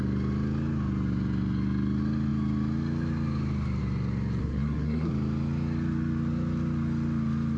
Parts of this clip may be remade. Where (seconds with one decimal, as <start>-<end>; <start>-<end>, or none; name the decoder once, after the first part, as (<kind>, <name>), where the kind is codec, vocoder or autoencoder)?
4.4-5.1 (codec, SNAC)